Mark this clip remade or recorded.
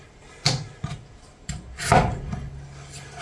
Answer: recorded